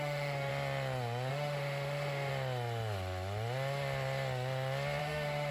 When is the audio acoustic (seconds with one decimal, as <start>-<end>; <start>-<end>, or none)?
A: 0.5-1.3; 2.3-5.0